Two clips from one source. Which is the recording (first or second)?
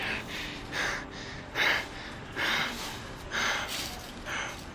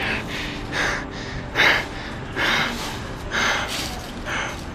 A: second